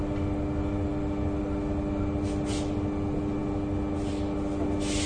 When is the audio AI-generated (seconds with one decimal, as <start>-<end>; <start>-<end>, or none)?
none